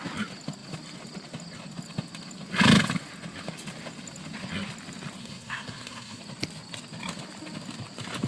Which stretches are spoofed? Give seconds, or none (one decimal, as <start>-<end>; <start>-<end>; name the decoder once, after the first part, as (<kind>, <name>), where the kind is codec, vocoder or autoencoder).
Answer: 5.2-6.2 (codec, SNAC)